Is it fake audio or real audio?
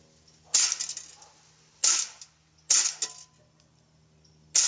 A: real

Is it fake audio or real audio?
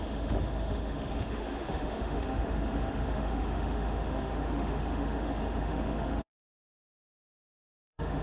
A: fake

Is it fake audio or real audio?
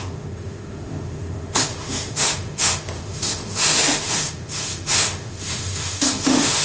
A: fake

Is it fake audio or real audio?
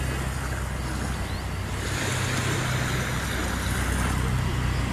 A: real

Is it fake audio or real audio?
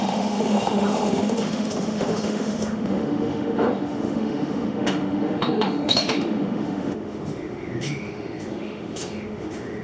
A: fake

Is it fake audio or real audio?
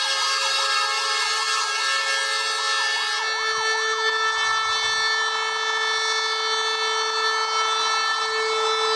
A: real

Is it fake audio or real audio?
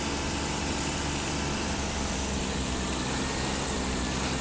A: fake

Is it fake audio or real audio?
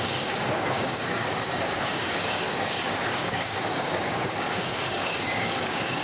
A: fake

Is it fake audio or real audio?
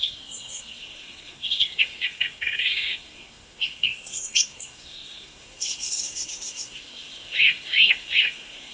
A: fake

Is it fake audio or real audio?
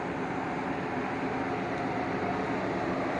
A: real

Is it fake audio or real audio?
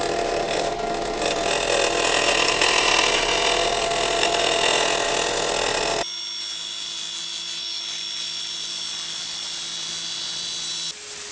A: real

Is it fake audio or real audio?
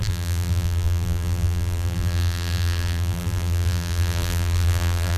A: fake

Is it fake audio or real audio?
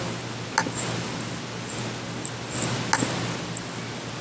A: real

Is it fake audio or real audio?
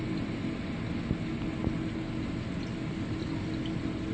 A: real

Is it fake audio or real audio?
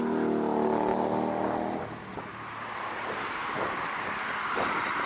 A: real